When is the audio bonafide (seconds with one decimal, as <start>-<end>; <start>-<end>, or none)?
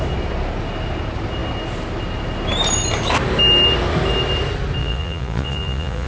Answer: 0.0-4.8